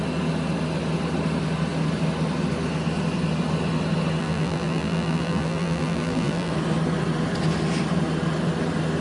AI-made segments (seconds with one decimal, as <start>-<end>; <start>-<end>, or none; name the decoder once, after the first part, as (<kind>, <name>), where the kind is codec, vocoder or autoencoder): 4.2-6.5 (vocoder, BigVGAN v2)